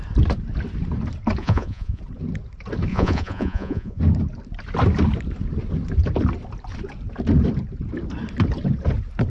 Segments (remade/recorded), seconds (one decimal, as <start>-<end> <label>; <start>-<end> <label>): 0.0-1.4 recorded; 1.4-2.0 remade; 2.0-2.9 recorded; 2.9-4.0 remade; 4.0-9.3 recorded